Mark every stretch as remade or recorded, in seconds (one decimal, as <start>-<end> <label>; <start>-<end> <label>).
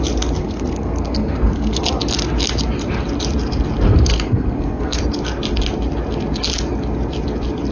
0.0-0.4 recorded; 0.4-1.8 remade; 1.8-3.9 recorded; 3.9-5.0 remade; 5.0-7.7 recorded